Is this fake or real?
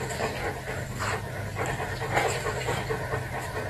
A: real